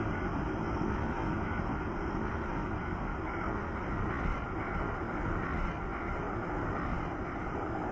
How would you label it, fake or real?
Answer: real